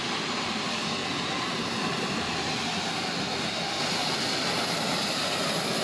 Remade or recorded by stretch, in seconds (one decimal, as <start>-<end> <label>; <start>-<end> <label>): 0.0-5.8 recorded